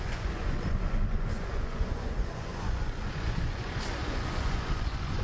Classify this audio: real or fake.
fake